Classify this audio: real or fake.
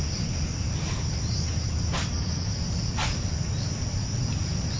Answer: real